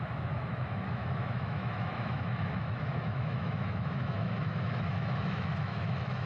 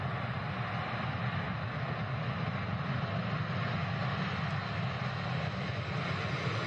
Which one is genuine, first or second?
second